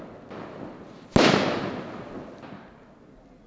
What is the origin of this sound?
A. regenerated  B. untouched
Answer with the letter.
B